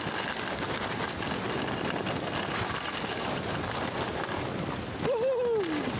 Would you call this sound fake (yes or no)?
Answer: no